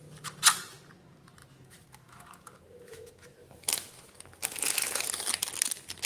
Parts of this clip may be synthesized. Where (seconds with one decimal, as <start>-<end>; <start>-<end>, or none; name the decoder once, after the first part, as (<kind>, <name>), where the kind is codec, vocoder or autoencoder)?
1.4-5.0 (autoencoder, DAC-VAE)